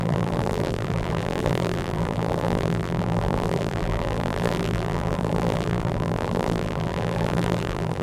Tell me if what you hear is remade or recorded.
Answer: remade